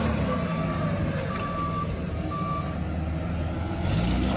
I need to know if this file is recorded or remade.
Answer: recorded